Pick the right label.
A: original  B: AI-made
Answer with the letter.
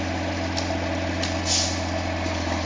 A